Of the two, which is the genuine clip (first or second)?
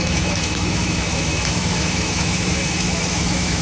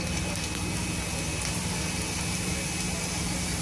second